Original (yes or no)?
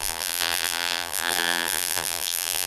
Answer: no